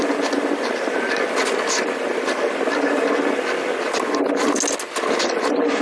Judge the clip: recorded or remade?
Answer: recorded